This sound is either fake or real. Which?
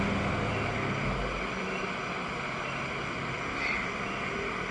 real